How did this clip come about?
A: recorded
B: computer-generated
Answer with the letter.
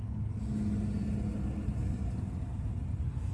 A